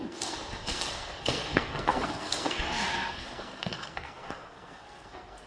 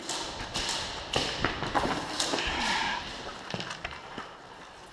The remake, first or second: first